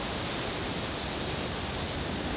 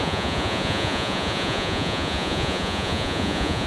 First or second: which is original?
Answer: first